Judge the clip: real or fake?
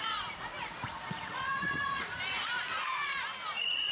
fake